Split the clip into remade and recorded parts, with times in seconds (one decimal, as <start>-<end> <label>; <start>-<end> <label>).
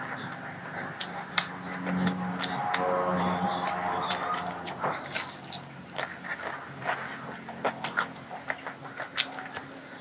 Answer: 0.0-4.3 recorded; 4.3-5.2 remade; 5.2-10.0 recorded